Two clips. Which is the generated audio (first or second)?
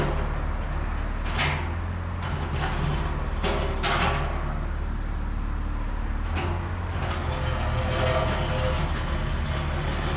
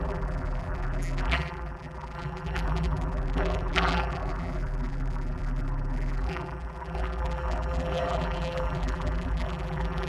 second